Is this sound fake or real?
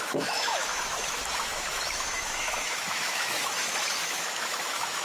fake